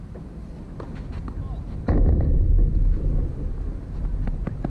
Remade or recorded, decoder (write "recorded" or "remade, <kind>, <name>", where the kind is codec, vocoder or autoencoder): remade, vocoder, BigVGAN v2